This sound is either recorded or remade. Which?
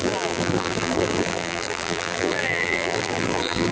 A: remade